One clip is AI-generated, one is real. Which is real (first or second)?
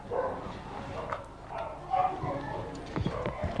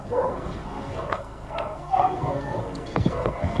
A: first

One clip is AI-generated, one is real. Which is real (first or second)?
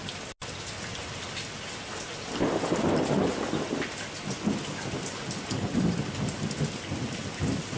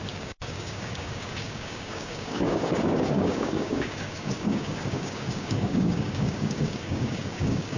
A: first